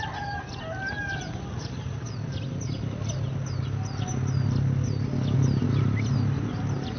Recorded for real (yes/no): yes